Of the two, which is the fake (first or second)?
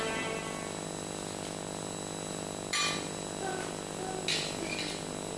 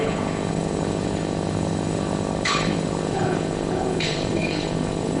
second